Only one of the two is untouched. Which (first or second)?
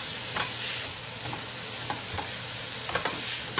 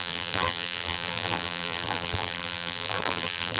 first